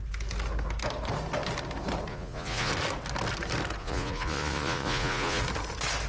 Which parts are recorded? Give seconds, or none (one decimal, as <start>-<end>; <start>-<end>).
0.0-2.1; 2.7-3.8; 5.4-6.1